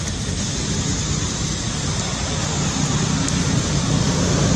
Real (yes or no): yes